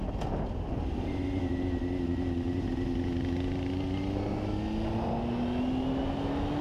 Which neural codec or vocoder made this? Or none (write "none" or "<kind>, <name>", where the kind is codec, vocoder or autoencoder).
none